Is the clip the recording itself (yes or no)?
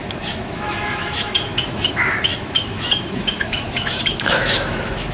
no